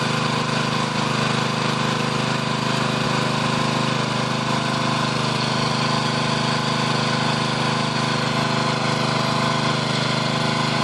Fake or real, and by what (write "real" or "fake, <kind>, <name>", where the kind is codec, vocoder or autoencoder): real